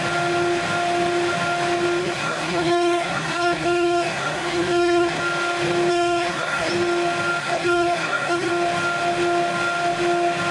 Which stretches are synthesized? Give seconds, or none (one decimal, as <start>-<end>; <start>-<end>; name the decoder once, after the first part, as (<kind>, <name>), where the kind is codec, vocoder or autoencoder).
2.0-5.2 (codec, SNAC); 5.9-6.7; 7.4-8.5